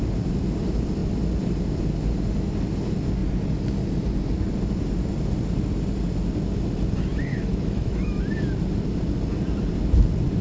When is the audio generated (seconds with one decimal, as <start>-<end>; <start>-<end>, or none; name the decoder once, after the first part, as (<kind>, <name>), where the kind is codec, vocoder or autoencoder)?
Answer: 7.3-8.2 (autoencoder, DAC-VAE)